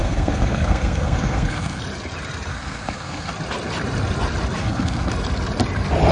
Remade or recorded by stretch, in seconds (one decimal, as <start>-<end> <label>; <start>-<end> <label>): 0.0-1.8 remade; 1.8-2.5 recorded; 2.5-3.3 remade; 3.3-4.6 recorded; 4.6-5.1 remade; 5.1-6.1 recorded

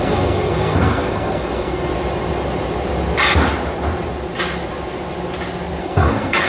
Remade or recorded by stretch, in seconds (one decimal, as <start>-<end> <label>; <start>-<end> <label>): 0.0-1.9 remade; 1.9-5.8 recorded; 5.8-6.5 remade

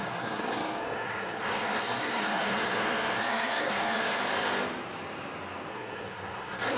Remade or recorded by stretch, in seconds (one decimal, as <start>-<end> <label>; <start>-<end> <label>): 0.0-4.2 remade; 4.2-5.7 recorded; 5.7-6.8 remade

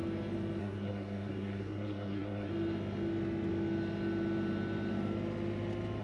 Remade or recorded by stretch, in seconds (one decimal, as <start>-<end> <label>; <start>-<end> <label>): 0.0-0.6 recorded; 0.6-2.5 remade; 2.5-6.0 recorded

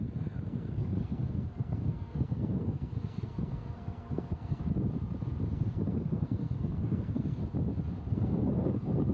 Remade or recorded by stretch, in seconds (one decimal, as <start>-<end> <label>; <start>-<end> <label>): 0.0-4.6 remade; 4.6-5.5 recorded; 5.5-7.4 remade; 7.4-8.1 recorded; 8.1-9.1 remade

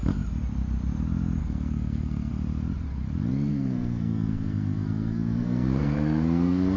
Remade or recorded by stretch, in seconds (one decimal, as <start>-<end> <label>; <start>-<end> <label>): 0.0-1.4 recorded; 1.4-2.3 remade; 2.3-3.5 recorded; 3.5-6.8 remade